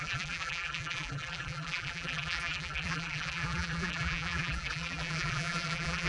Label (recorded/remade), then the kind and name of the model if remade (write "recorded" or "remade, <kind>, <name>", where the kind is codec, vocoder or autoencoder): remade, vocoder, BigVGAN v2